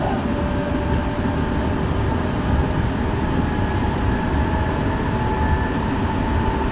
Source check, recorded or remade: recorded